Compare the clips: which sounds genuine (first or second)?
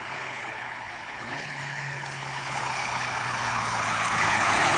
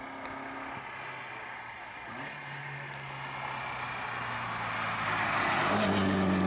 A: second